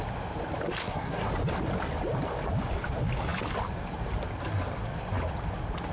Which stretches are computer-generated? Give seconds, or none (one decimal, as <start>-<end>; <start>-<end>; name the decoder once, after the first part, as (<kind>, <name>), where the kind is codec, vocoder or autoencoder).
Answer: 0.8-1.3 (codec, SNAC)

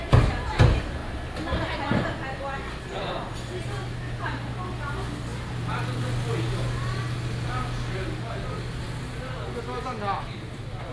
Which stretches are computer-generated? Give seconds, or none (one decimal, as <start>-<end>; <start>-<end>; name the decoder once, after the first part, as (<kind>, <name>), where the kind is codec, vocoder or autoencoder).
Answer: none

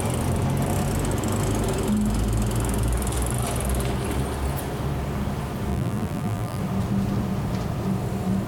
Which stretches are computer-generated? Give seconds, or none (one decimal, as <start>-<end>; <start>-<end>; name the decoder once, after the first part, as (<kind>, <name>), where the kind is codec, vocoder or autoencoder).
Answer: 5.7-6.6 (vocoder, BigVGAN v2)

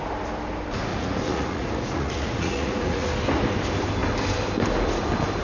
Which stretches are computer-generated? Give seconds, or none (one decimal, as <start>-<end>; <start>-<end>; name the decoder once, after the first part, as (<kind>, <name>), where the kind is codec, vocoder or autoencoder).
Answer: 0.9-3.1 (vocoder, Vocos)

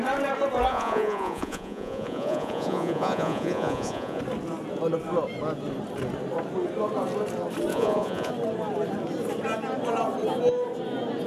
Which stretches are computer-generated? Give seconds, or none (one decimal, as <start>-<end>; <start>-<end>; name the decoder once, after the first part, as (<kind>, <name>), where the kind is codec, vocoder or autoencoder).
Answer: 0.7-4.2 (vocoder, Vocos); 7.7-8.3